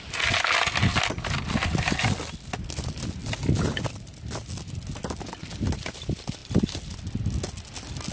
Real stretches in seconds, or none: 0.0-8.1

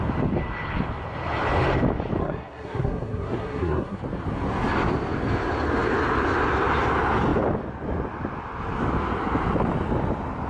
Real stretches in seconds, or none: 0.0-2.2; 4.0-10.5

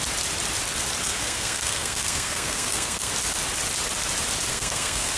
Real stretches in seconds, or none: 0.0-1.0; 3.1-4.5